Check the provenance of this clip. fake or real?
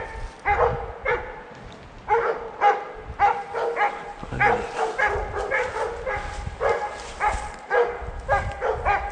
real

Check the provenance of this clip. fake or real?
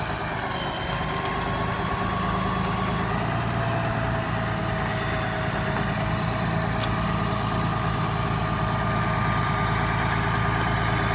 real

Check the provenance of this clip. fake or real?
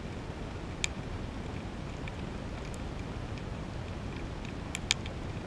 real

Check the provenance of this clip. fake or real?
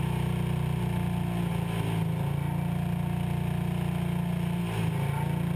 real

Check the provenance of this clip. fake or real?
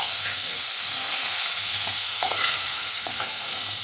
fake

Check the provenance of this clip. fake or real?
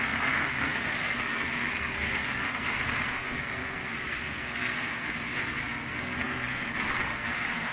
fake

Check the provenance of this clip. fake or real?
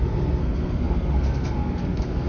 fake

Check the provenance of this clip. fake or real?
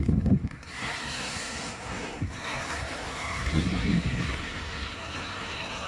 fake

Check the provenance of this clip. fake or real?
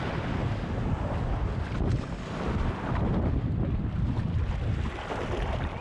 real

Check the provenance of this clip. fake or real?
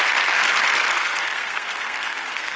fake